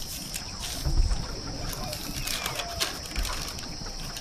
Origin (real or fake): real